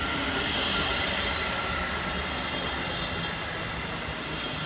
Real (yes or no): yes